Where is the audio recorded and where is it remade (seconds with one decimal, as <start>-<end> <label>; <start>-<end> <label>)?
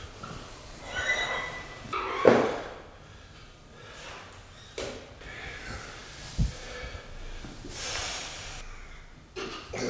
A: 0.0-9.9 recorded